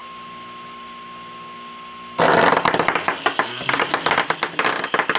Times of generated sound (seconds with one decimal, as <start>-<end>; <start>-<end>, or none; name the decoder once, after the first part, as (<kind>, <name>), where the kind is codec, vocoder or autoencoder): none

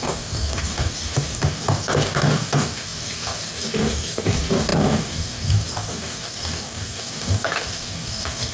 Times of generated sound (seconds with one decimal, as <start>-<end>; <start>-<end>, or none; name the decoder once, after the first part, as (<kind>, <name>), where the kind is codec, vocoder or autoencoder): 0.0-8.5 (codec, DAC)

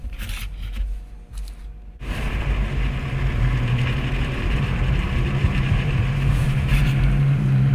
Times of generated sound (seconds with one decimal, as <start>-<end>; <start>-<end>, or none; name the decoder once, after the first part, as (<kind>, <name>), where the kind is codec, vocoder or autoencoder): 1.7-7.7 (vocoder, BigVGAN v2)

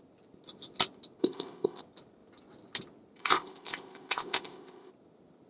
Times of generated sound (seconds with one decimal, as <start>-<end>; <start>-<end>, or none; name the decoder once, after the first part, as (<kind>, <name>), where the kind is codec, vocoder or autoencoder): 1.2-1.8 (codec, ZipCodec); 3.2-4.9